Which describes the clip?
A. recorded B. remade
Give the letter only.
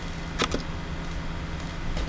A